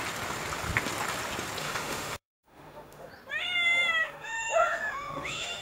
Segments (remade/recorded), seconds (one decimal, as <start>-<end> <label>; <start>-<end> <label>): 0.0-1.6 recorded; 1.6-3.1 remade; 3.1-4.0 recorded; 4.0-5.6 remade

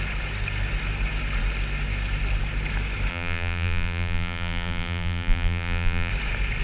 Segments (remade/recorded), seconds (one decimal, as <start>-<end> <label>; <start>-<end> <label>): 0.0-3.1 recorded; 3.1-6.1 remade; 6.1-6.6 recorded

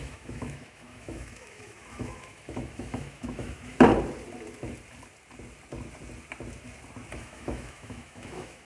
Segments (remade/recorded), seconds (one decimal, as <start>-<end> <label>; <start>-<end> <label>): 0.0-3.9 remade; 3.9-7.2 recorded; 7.2-8.6 remade